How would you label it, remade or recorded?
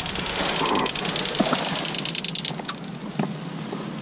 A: recorded